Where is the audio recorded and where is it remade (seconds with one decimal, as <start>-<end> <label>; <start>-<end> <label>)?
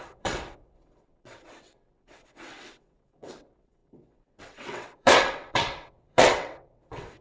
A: 0.0-7.2 remade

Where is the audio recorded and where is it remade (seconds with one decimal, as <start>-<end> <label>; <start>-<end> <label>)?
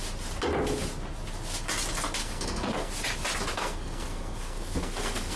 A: 0.0-2.2 recorded; 2.2-2.9 remade; 2.9-3.5 recorded; 3.5-5.4 remade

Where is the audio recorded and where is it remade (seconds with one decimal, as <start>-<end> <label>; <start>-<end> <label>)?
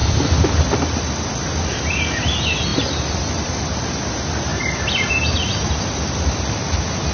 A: 0.0-1.2 remade; 1.2-2.7 recorded; 2.7-4.0 remade; 4.0-4.5 recorded; 4.5-5.1 remade; 5.1-7.1 recorded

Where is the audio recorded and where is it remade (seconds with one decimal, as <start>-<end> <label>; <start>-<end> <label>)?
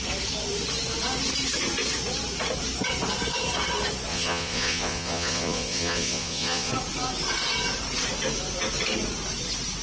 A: 0.0-4.1 recorded; 4.1-6.7 remade; 6.7-9.8 recorded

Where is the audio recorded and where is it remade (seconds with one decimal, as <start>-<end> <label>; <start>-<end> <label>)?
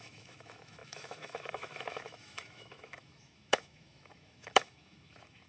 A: 0.0-5.5 remade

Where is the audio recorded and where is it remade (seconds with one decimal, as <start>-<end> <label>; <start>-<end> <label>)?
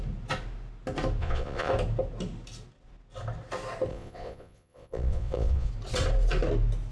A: 0.0-1.2 recorded; 1.2-1.7 remade; 1.7-3.9 recorded; 3.9-5.7 remade; 5.7-6.9 recorded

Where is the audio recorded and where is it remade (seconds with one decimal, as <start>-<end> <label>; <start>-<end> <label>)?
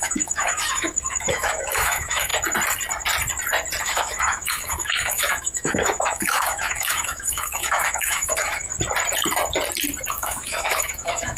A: 0.0-2.3 remade; 2.3-3.8 recorded; 3.8-8.7 remade; 8.7-10.1 recorded; 10.1-11.4 remade